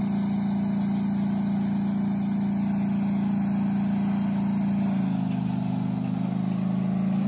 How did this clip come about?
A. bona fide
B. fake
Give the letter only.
A